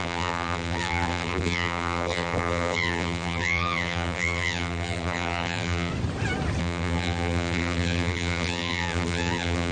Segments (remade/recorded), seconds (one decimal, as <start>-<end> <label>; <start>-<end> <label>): 0.0-5.9 remade; 5.9-6.6 recorded; 6.6-9.7 remade